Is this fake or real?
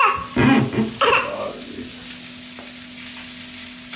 real